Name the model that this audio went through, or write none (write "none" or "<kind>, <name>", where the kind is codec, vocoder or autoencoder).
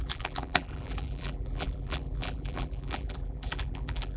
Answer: vocoder, BigVGAN v2